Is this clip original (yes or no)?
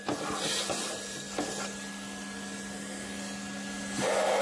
yes